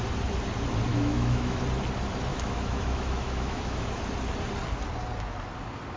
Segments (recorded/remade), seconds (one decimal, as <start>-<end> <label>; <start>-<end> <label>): 0.0-0.9 recorded; 0.9-1.6 remade; 1.6-2.3 recorded; 2.3-4.0 remade; 4.0-6.0 recorded